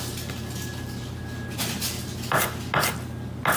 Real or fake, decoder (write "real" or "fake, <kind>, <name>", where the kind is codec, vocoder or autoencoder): real